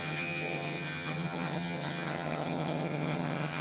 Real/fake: fake